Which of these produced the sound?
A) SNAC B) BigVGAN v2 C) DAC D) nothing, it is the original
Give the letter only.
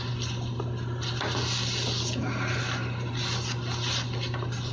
D